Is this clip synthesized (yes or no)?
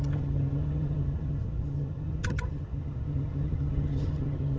yes